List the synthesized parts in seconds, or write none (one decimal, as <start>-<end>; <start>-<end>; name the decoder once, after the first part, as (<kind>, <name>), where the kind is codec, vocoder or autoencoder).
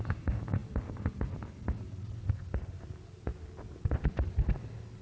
none